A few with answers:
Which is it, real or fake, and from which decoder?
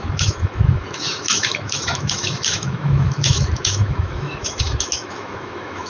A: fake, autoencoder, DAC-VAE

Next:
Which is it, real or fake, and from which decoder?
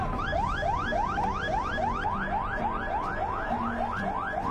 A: real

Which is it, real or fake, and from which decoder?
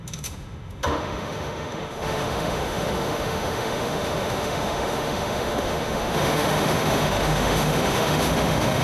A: fake, autoencoder, DAC-VAE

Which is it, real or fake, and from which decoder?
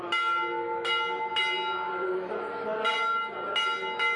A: real